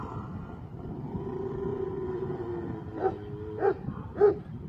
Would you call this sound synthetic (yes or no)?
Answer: no